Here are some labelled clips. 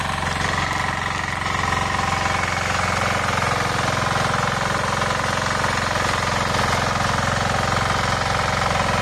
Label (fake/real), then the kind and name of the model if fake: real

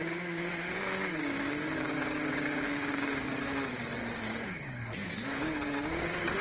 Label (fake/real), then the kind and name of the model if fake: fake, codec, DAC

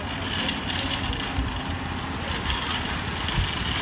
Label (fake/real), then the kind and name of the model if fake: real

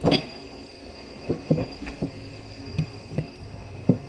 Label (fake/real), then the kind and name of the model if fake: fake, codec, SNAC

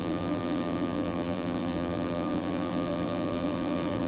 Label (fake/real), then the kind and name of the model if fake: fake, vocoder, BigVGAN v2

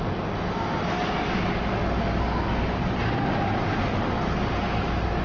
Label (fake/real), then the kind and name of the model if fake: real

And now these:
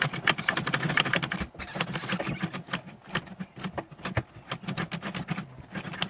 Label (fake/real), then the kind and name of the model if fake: real